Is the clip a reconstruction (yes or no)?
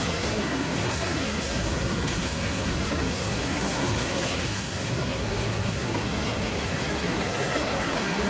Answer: yes